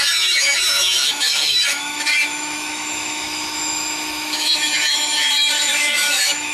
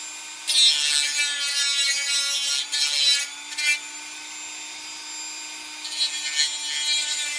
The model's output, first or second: first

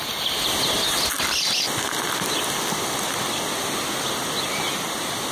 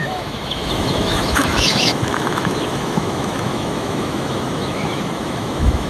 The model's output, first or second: second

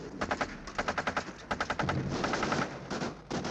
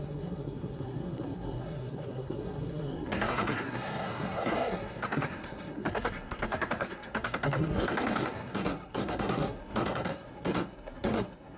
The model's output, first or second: second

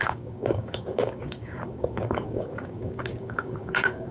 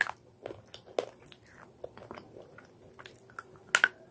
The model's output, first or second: first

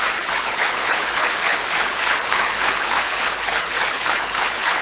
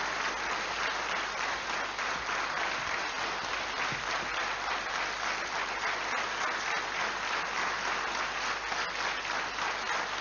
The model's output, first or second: first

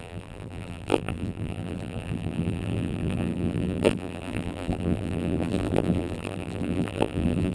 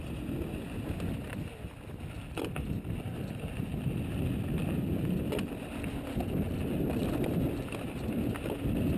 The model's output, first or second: first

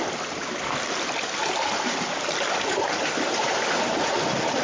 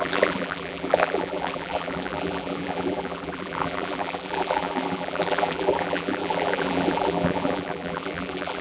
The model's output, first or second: second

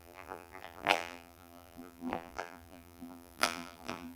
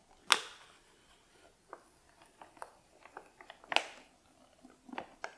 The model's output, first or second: first